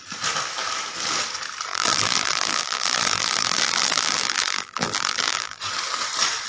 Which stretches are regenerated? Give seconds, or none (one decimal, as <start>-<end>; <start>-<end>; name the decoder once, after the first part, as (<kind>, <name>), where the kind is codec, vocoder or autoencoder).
1.7-5.6 (vocoder, BigVGAN v2)